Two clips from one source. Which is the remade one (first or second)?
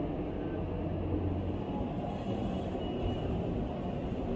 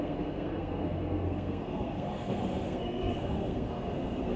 second